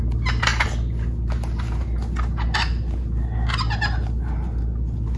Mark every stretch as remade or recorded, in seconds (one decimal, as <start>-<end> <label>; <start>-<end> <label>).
0.0-5.2 recorded